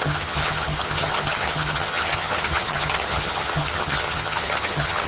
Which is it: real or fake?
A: fake